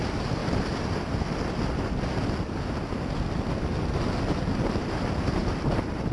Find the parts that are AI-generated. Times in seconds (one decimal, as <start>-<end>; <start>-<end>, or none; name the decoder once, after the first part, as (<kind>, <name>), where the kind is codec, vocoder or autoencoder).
4.8-6.1 (vocoder, BigVGAN v2)